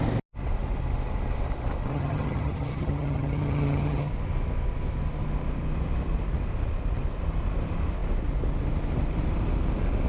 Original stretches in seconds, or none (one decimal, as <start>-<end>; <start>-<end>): 0.0-1.9; 4.1-10.1